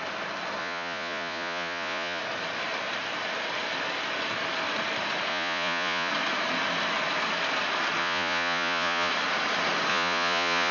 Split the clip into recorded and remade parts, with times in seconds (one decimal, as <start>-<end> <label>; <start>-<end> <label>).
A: 0.0-0.6 recorded; 0.6-2.2 remade; 2.2-5.3 recorded; 5.3-6.1 remade; 6.1-8.0 recorded; 8.0-9.1 remade; 9.1-9.9 recorded; 9.9-10.7 remade